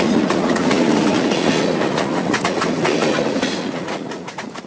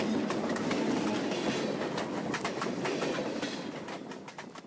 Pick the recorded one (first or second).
second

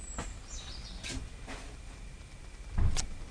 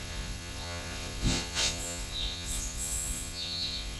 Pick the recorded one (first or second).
first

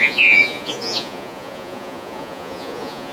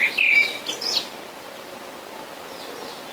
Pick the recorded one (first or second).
second